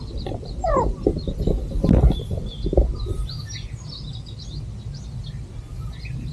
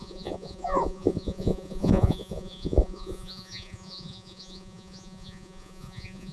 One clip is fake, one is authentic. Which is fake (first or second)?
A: second